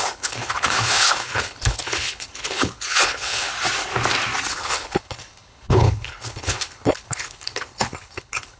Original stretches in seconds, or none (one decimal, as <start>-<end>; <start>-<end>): 3.5-4.5